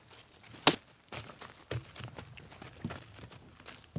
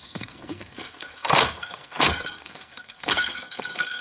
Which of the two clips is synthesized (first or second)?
second